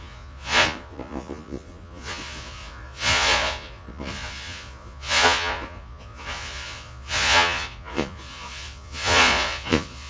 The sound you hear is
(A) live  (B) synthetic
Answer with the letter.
B